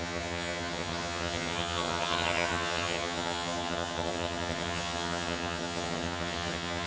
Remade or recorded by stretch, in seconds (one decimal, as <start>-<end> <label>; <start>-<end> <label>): 0.0-6.9 remade